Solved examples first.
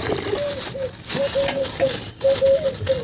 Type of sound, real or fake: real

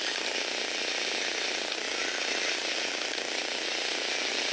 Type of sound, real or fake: real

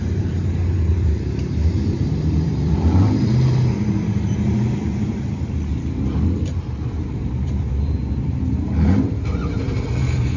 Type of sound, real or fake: fake